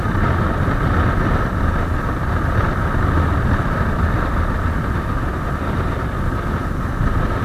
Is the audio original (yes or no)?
yes